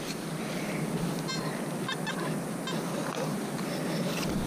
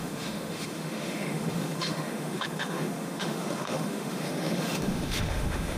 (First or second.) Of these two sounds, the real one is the first